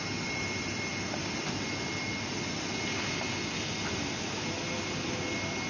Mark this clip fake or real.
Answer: real